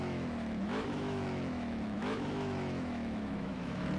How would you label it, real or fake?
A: fake